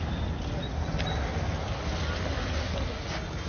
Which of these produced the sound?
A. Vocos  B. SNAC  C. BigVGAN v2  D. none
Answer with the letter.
D